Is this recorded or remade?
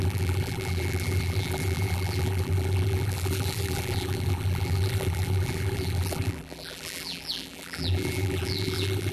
remade